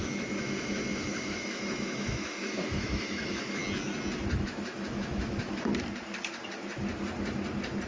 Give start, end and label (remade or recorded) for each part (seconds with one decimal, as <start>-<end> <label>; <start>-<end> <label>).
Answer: 0.0-3.6 remade; 3.6-4.4 recorded; 4.4-5.7 remade; 5.7-7.9 recorded